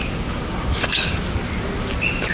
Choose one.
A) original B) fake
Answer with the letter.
A